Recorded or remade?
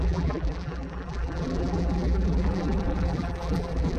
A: remade